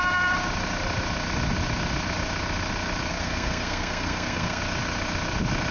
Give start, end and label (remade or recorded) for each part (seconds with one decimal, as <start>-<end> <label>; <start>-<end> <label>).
0.0-3.1 recorded; 3.1-4.6 remade; 4.6-5.7 recorded